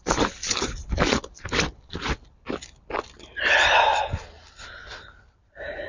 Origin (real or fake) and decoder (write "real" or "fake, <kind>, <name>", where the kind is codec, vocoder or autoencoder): fake, vocoder, BigVGAN v2